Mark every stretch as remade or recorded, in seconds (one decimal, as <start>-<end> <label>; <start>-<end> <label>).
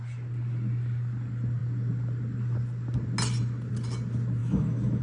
0.0-4.4 recorded; 4.4-5.0 remade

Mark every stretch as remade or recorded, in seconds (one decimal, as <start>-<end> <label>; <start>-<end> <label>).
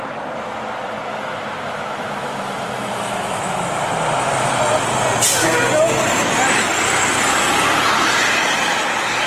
0.0-1.1 recorded; 1.1-3.9 remade; 3.9-9.3 recorded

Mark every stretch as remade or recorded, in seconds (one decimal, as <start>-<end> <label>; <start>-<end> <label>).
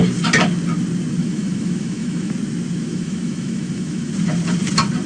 0.0-1.2 recorded; 1.2-2.3 remade; 2.3-2.8 recorded; 2.8-4.1 remade; 4.1-5.1 recorded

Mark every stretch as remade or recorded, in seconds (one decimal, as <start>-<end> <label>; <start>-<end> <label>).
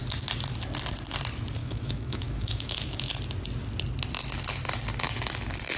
0.0-1.6 recorded; 1.6-3.1 remade; 3.1-5.8 recorded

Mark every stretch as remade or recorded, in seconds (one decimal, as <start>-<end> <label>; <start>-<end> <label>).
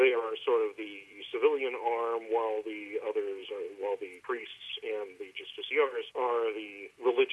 0.0-7.3 recorded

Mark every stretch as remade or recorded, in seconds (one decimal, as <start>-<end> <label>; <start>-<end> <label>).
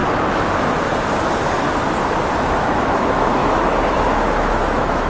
0.0-2.4 recorded; 2.4-5.1 remade